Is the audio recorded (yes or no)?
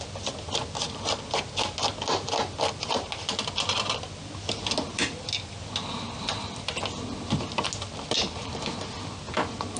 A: yes